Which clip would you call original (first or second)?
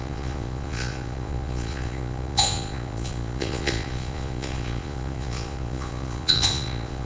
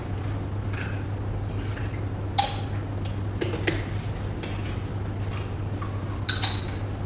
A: second